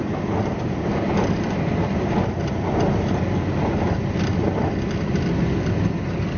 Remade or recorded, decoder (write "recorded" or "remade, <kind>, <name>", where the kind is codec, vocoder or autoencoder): recorded